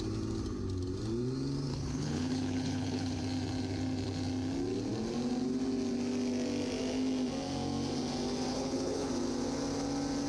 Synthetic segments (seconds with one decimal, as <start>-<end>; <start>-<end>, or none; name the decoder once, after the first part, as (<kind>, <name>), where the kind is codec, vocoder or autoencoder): 1.7-3.2 (codec, HILCodec); 8.5-9.1